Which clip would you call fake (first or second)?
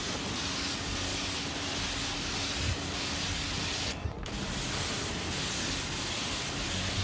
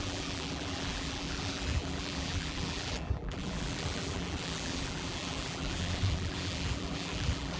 second